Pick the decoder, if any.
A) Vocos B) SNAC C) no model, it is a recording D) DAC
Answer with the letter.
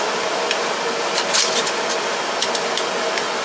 C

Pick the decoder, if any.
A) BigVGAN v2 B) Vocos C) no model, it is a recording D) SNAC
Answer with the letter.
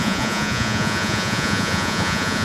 B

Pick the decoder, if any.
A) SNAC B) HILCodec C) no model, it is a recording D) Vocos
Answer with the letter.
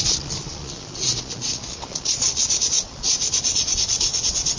D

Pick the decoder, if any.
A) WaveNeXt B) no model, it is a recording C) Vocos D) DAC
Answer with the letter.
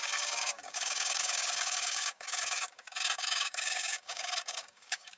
D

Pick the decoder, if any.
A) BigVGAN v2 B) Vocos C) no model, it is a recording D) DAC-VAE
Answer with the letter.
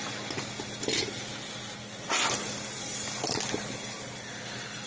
C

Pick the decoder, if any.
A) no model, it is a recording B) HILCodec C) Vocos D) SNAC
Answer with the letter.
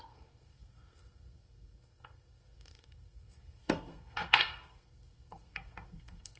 D